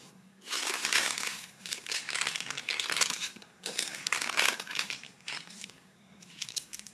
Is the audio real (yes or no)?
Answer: no